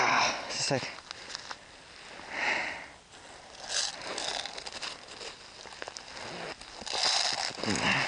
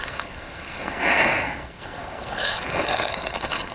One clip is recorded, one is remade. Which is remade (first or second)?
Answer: second